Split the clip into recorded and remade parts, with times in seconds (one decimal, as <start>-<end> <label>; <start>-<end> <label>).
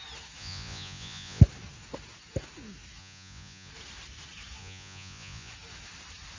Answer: 0.0-0.4 recorded; 0.4-1.4 remade; 1.4-3.0 recorded; 3.0-3.7 remade; 3.7-4.6 recorded; 4.6-5.5 remade; 5.5-6.4 recorded